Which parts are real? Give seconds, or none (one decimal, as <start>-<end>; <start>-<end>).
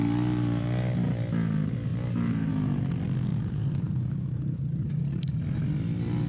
0.0-3.3; 5.6-6.3